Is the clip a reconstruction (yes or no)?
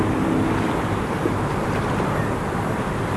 no